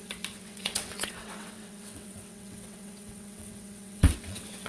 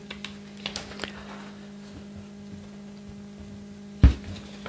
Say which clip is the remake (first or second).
first